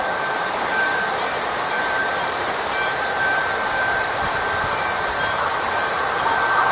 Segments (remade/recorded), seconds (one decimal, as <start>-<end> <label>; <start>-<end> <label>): 0.0-6.7 remade